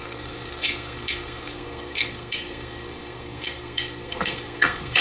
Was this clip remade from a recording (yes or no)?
yes